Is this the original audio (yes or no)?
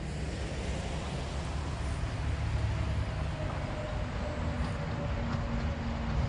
yes